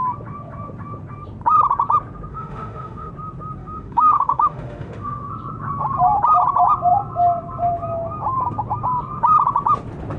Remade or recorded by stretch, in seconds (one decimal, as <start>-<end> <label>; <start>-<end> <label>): 0.0-2.3 recorded; 2.3-3.1 remade; 3.1-3.6 recorded; 3.6-5.3 remade; 5.3-10.2 recorded